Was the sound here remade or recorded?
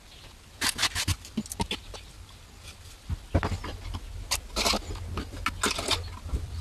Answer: recorded